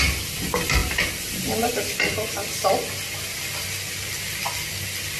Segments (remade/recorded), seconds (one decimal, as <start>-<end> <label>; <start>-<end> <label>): 0.0-5.2 recorded